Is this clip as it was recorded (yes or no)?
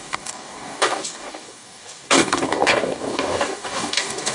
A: no